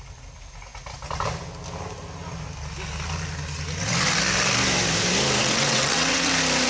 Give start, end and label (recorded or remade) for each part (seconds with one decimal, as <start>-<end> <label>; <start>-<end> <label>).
0.0-5.4 recorded; 5.4-6.3 remade; 6.3-6.7 recorded